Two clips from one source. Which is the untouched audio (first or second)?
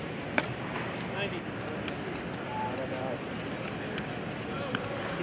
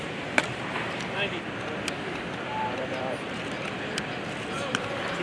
first